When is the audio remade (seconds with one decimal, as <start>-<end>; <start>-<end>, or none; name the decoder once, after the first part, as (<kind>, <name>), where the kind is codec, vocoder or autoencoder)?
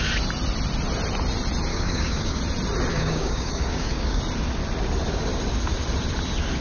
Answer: 1.7-2.4 (codec, DAC); 2.9-4.2